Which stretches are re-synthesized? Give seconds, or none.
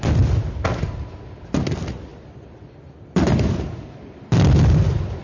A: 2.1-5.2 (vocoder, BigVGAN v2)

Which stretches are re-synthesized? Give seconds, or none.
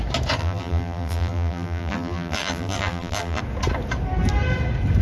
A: 0.4-3.4 (vocoder, BigVGAN v2)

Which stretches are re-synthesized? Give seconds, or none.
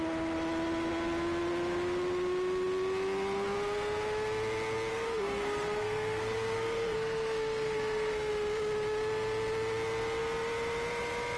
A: 4.9-8.3 (codec, SNAC)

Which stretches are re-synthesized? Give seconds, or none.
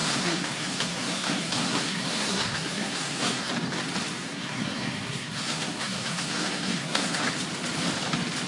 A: 0.0-3.5 (codec, SNAC); 4.2-7.3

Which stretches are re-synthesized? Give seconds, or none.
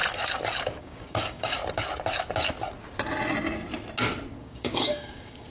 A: 0.8-1.6 (codec, DAC); 4.4-5.5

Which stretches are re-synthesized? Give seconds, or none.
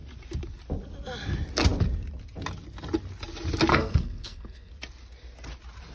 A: 3.7-4.7 (codec, SNAC)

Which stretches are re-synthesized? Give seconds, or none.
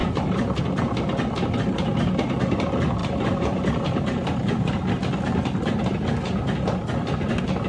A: 0.0-0.6 (vocoder, BigVGAN v2); 3.0-4.9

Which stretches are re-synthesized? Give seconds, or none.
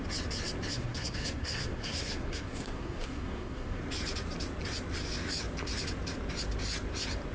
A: 0.7-3.8 (codec, SNAC)